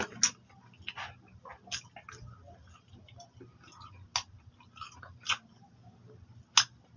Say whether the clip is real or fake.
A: real